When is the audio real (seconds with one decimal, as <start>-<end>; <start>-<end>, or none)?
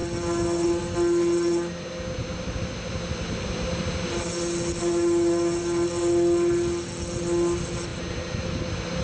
0.0-9.0